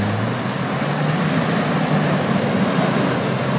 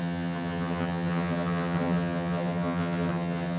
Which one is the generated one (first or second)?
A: second